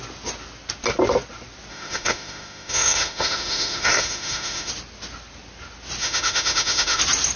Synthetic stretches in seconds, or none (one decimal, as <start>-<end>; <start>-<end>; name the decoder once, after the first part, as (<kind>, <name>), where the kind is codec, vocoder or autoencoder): 1.7-4.7 (autoencoder, DAC-VAE); 6.0-7.0